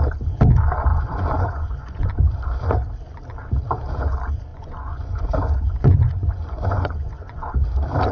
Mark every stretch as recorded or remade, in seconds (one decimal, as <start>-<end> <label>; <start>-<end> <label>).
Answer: 0.0-0.9 recorded; 0.9-2.1 remade; 2.1-4.5 recorded; 4.5-7.5 remade; 7.5-8.1 recorded

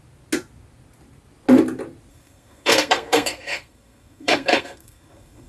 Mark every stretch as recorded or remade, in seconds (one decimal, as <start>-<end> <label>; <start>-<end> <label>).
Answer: 0.0-2.1 recorded; 2.1-5.5 remade

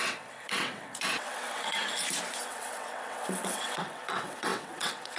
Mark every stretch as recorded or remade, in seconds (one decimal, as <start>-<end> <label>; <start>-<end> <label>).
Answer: 0.0-1.8 remade; 1.8-2.4 recorded; 2.4-5.2 remade